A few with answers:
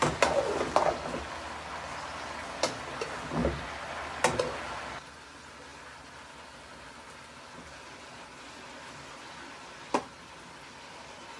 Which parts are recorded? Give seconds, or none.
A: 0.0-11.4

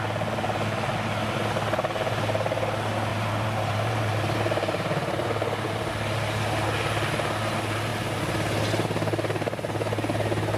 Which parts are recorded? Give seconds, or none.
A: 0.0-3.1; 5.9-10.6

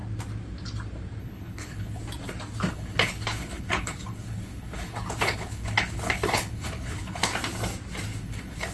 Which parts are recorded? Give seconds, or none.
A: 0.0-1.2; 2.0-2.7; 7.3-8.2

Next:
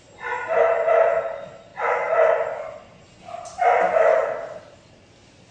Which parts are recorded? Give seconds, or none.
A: 0.0-5.5

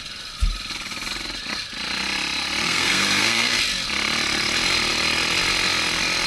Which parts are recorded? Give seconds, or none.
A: 0.0-2.6; 3.6-6.3

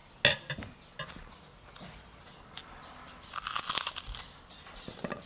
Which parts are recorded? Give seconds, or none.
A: 0.0-1.5; 2.2-5.3

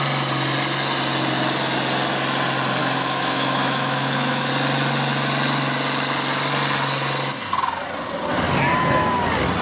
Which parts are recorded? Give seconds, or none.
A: 0.0-2.8; 4.5-9.6